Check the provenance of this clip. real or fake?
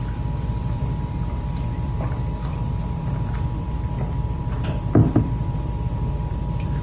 fake